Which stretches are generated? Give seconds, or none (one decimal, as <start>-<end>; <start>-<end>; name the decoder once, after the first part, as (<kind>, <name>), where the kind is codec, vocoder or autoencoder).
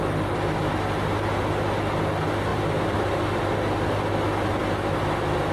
none